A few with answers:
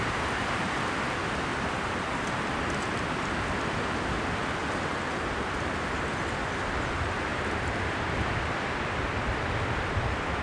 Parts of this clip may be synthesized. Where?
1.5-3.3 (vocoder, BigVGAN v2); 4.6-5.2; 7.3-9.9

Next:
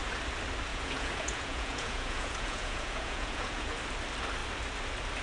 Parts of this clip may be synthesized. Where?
0.7-3.8 (vocoder, Vocos)

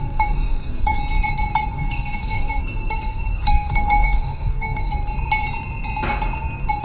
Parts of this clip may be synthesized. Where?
0.0-1.0 (codec, SNAC); 1.7-4.9

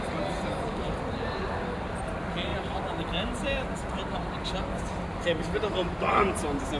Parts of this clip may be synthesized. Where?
none

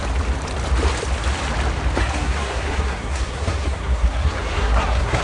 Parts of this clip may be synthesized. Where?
2.0-5.2 (codec, SNAC)

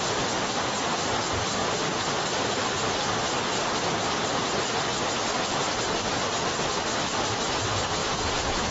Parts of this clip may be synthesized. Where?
8.0-8.7 (vocoder, Vocos)